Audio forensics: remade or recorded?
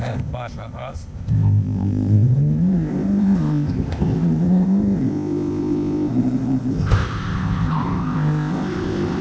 remade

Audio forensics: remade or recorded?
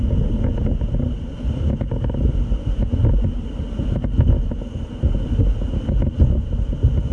recorded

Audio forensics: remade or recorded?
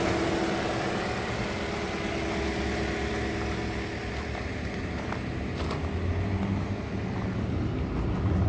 recorded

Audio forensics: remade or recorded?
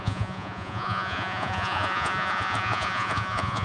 remade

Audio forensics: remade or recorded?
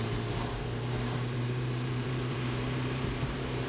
remade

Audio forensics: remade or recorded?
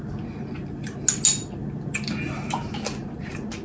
recorded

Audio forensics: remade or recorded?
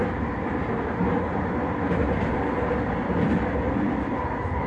recorded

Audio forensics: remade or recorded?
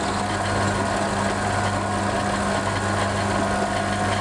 recorded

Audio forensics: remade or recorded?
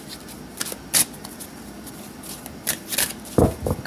recorded